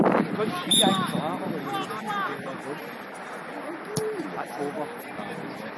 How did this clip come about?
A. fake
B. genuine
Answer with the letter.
B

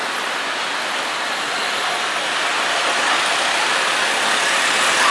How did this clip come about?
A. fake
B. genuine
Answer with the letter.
B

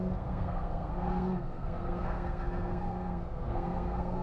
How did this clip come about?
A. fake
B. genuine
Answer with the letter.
A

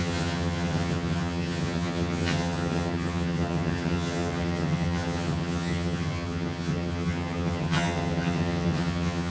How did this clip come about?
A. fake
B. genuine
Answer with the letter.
A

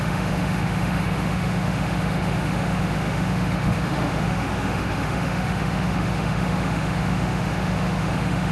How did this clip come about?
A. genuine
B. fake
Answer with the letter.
B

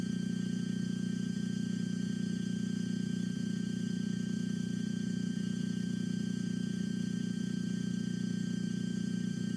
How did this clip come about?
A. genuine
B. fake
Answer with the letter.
B